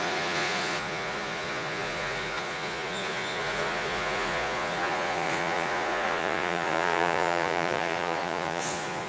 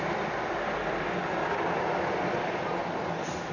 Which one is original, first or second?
second